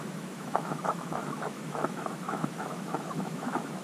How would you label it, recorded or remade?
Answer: remade